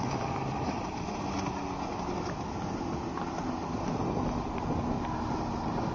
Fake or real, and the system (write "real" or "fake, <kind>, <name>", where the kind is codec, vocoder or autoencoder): real